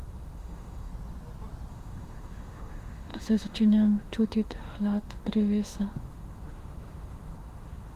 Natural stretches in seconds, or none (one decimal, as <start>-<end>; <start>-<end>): 0.9-1.7